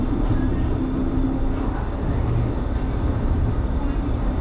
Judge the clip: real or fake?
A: real